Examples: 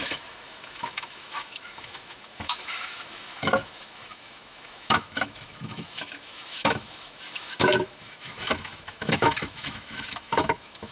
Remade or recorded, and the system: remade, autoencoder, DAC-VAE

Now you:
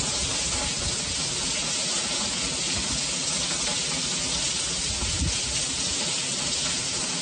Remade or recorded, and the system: recorded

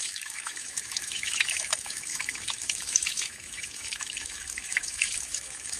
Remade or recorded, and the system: remade, autoencoder, DAC-VAE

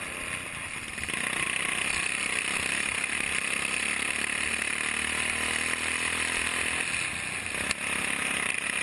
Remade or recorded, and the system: recorded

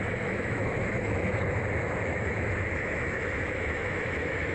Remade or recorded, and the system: remade, autoencoder, DAC-VAE